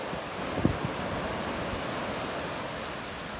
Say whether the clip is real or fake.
real